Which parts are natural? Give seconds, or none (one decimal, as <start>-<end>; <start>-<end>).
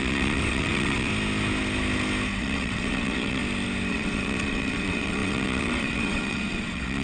1.1-2.4; 3.4-3.9